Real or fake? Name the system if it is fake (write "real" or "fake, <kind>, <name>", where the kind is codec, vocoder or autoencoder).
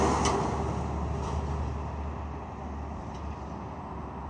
real